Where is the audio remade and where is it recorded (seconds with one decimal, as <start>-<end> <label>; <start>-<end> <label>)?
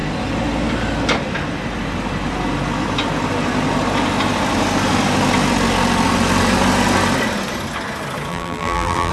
0.0-8.3 recorded; 8.3-9.1 remade